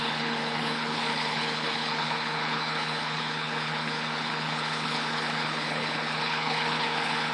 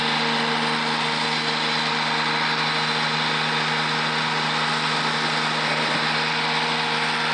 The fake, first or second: first